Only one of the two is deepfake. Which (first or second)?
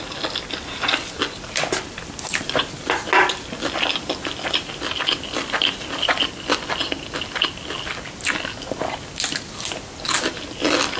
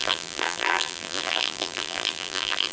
second